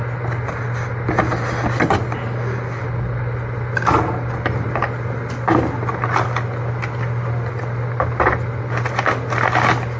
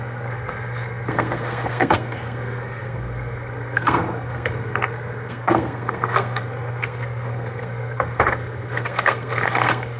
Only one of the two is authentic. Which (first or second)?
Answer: first